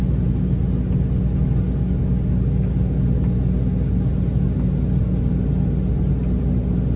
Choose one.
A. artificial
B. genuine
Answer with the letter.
B